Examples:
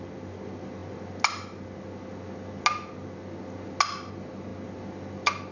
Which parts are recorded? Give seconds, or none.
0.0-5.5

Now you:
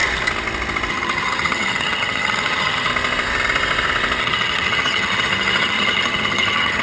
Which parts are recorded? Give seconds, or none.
0.0-0.9; 2.9-4.2

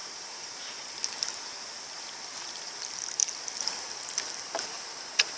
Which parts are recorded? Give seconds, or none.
1.1-5.4